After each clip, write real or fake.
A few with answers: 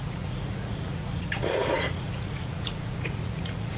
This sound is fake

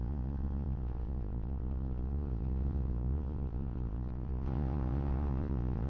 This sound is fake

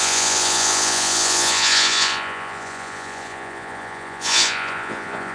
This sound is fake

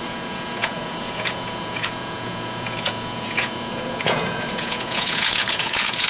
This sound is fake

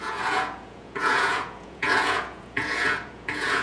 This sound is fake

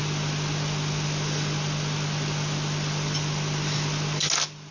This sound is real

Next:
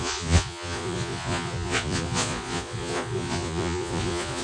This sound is fake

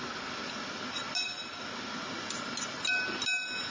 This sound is real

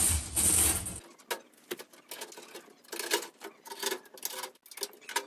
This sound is real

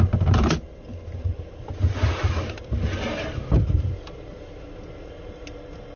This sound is real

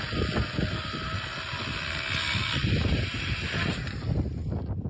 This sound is real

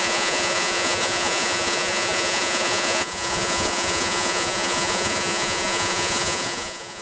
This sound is fake